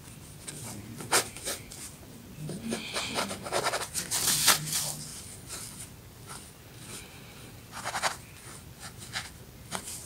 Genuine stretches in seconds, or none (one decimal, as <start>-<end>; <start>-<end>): 0.0-10.1